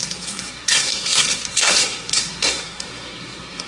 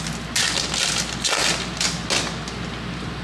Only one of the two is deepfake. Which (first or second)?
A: first